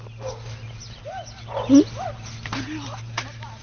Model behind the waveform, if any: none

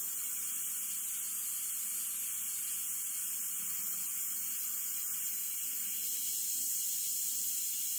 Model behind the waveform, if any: none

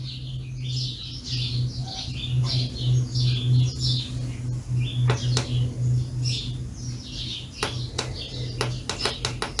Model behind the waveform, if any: none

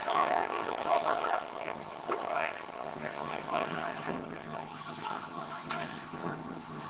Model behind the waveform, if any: vocoder, HiFi-GAN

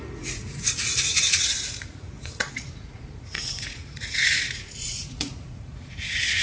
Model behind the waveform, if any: vocoder, Vocos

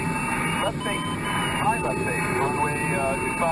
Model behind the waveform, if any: none